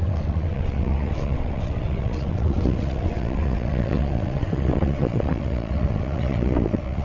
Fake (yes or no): yes